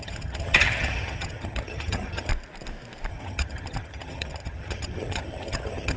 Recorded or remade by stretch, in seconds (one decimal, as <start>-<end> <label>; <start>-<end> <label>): 0.0-2.3 remade; 2.3-3.1 recorded; 3.1-6.0 remade